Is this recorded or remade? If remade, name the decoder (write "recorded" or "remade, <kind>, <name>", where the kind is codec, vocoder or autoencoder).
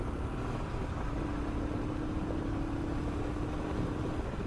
recorded